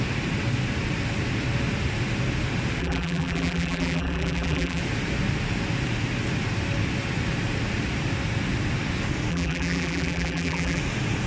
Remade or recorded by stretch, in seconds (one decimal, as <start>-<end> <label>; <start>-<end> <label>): 0.0-2.8 recorded; 2.8-4.8 remade; 4.8-9.3 recorded; 9.3-10.8 remade; 10.8-11.3 recorded